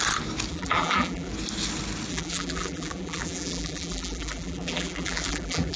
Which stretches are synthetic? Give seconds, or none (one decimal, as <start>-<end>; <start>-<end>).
0.5-1.3; 2.1-5.8